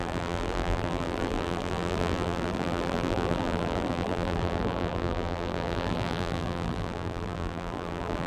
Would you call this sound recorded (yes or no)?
no